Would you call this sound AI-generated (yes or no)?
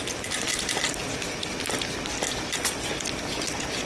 no